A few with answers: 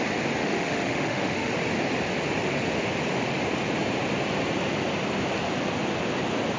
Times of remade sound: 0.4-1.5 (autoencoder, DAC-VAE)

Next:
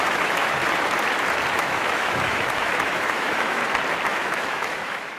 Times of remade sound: 0.0-0.6 (autoencoder, DAC-VAE); 1.5-3.6; 4.1-5.2